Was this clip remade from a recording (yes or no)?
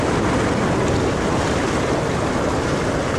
no